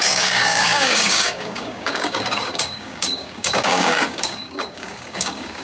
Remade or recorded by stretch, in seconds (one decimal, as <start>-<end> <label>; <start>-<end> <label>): 0.0-5.6 remade